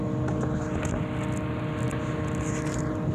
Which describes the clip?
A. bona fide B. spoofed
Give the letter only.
B